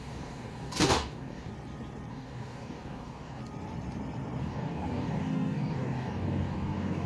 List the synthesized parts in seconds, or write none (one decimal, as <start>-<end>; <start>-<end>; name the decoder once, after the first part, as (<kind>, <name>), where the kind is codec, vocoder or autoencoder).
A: 0.0-1.5 (codec, DAC); 2.1-3.4; 4.4-7.1